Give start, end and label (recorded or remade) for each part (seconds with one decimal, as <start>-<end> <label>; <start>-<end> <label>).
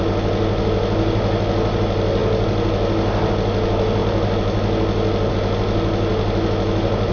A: 0.0-7.1 recorded